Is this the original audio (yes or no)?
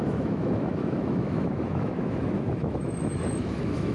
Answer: no